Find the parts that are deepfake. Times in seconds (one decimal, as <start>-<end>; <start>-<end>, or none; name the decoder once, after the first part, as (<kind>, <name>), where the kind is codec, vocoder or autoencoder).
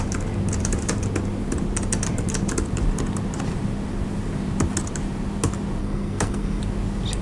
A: 5.8-6.6 (codec, SNAC)